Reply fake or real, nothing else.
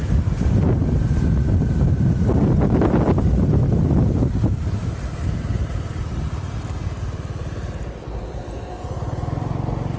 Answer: real